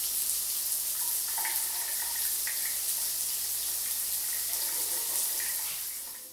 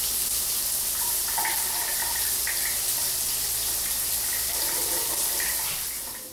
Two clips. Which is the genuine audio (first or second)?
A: first